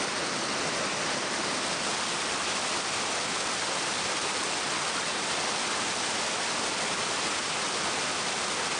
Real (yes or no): yes